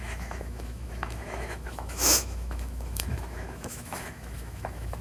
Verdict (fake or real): fake